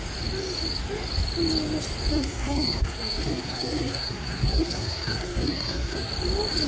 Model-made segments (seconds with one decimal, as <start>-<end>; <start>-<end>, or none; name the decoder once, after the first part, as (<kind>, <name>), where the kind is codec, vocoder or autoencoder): 2.1-6.1 (codec, SNAC)